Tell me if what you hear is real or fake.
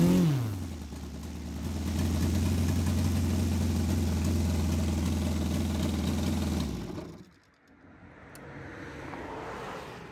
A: real